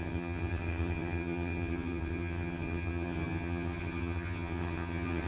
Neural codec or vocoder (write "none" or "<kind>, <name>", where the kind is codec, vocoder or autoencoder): vocoder, HiFi-GAN